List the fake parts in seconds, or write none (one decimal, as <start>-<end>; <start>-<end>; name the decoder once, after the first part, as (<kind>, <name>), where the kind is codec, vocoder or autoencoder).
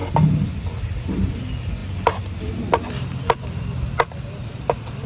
none